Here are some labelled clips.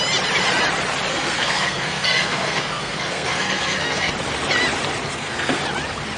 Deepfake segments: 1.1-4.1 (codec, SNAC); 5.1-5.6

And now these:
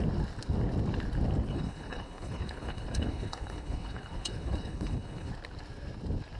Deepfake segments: 1.5-5.3 (codec, HILCodec)

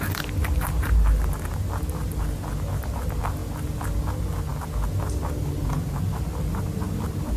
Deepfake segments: none

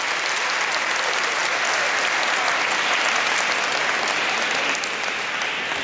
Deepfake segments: none

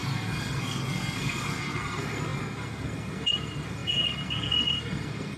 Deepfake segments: 0.0-5.4 (codec, SNAC)